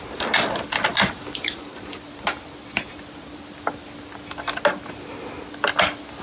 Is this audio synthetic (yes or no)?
no